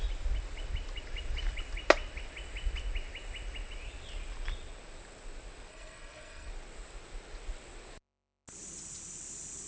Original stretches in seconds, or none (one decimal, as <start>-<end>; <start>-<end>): 0.0-5.7; 6.5-9.7